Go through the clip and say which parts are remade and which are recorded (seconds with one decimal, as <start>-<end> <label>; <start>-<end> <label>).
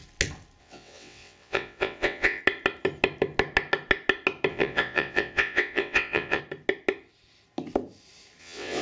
0.0-0.6 recorded; 0.6-2.4 remade; 2.4-4.5 recorded; 4.5-6.4 remade; 6.4-8.4 recorded; 8.4-8.8 remade